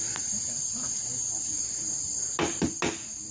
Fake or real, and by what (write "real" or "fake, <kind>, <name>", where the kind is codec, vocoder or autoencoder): real